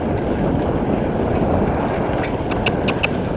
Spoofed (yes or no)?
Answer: no